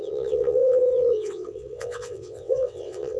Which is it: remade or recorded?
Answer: remade